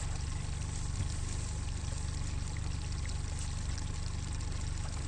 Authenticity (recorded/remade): recorded